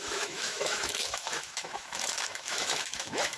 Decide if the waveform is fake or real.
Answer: fake